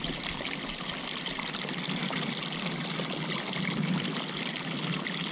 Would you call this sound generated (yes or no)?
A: no